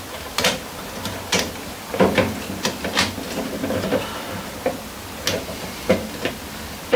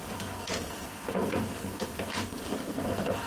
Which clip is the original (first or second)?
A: first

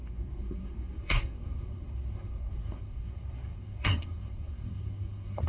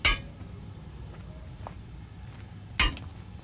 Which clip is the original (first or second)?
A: second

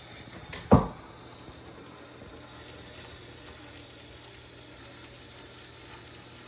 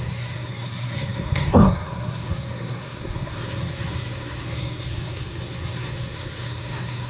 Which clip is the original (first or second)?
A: first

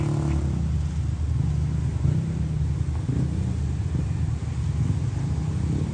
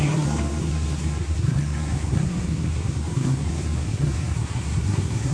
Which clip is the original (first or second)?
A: first